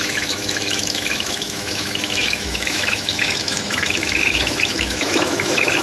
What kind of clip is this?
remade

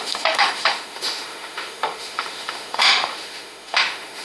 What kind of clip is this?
remade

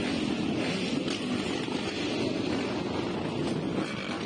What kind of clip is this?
recorded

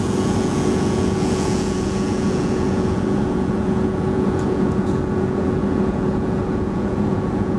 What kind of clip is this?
remade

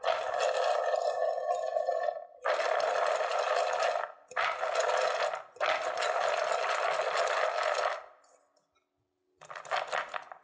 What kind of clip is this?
recorded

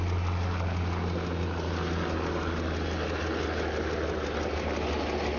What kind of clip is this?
recorded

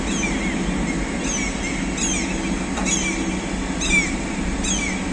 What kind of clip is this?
recorded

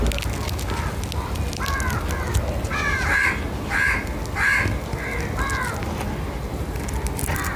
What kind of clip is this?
recorded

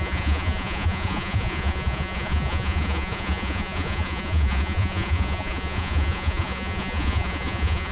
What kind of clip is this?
remade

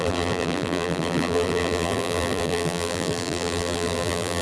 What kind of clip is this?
remade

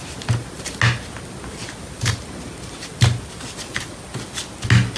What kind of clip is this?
recorded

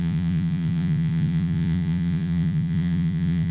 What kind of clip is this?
remade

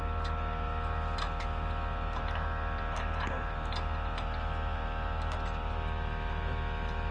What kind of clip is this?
recorded